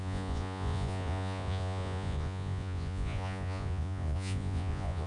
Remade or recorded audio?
remade